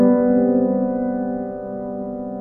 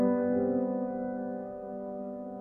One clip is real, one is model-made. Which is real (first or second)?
first